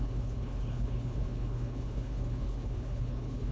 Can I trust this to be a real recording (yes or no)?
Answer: no